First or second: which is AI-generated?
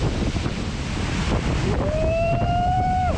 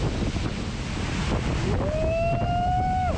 first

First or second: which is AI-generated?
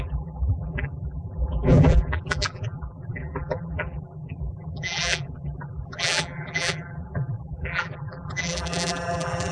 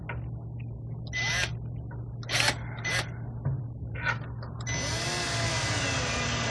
first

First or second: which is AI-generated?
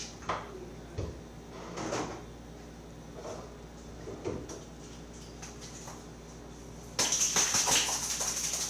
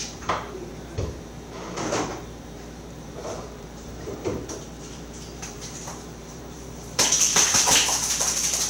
second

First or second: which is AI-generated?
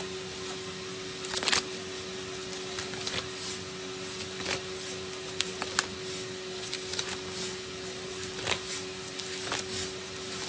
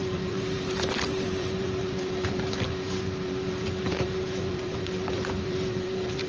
second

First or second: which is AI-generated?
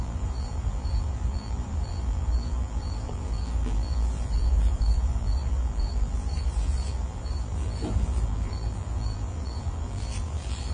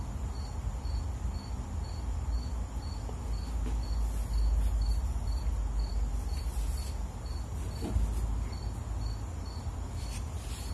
first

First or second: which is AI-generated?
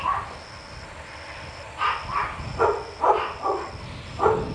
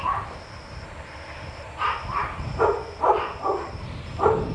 second